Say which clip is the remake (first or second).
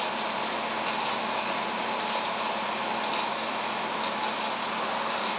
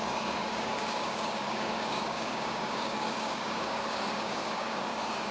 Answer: second